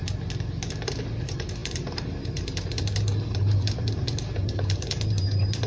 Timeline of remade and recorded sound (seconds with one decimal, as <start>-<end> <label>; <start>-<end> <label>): 0.0-1.2 recorded; 1.2-5.7 remade